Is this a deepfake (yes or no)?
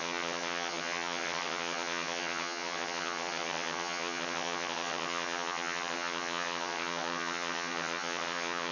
yes